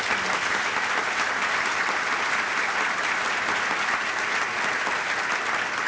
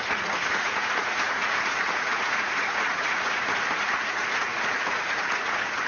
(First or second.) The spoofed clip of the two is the second